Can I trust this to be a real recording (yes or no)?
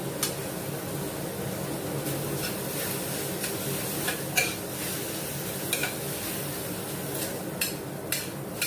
yes